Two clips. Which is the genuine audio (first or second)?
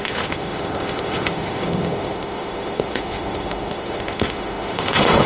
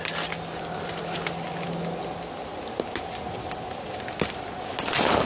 second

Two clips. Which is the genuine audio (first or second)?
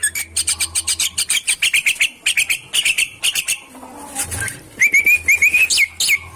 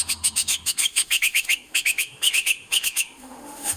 first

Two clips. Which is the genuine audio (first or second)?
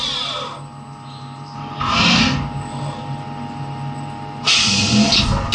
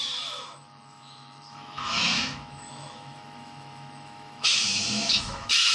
first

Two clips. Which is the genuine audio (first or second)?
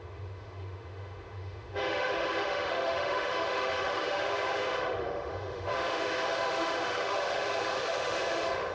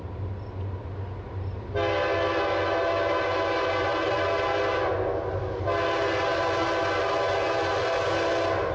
second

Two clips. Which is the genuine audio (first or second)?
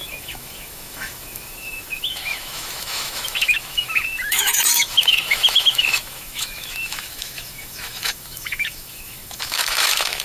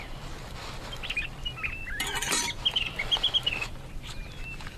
second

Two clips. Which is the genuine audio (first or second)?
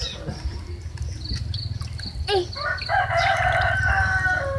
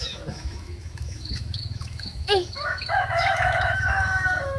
first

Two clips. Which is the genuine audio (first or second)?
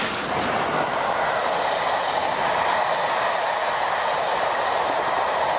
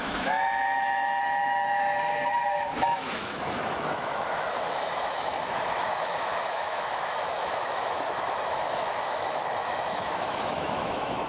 first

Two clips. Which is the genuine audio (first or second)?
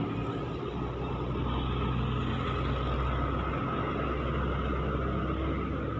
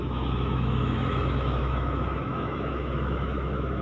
first